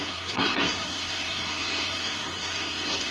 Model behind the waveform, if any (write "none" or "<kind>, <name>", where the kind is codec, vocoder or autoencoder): codec, SNAC